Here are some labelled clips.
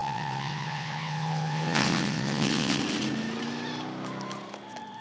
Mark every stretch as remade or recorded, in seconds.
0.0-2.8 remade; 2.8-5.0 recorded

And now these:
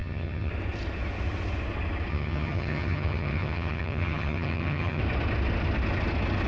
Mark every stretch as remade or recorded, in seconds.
0.0-0.5 remade; 0.5-2.1 recorded; 2.1-5.0 remade; 5.0-6.5 recorded

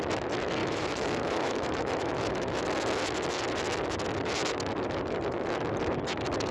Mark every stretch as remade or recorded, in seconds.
0.0-0.6 recorded; 0.6-2.6 remade; 2.6-6.5 recorded

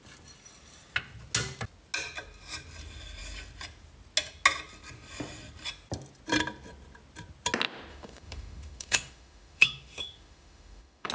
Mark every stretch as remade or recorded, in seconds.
0.0-7.9 recorded; 7.9-11.1 remade

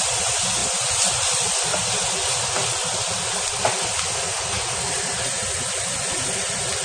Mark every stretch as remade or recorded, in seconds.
0.0-0.6 remade; 0.6-1.1 recorded; 1.1-6.8 remade

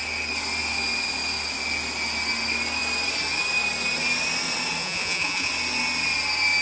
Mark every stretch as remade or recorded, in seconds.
0.0-4.8 recorded; 4.8-5.5 remade; 5.5-6.6 recorded

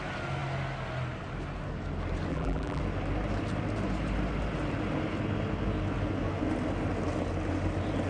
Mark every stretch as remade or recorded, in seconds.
0.0-2.3 recorded; 2.3-2.8 remade; 2.8-8.1 recorded